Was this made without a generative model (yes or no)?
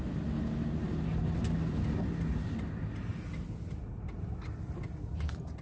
yes